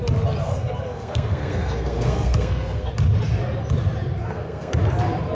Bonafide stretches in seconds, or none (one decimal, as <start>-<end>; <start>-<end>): 0.0-0.4; 2.9-4.2; 4.8-5.3